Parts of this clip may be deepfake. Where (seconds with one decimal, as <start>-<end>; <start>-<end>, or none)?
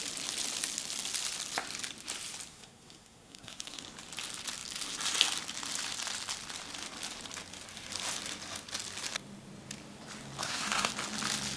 2.5-3.8; 10.4-10.9